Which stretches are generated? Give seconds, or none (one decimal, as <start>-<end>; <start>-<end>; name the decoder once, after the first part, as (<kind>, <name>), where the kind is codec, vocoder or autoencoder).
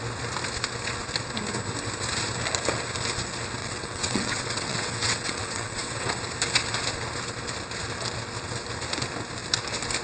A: 3.6-6.1 (vocoder, WaveNeXt)